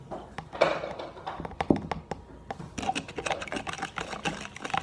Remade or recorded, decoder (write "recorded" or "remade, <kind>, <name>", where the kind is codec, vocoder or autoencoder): recorded